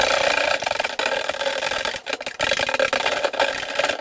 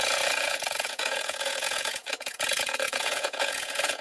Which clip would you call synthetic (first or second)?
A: second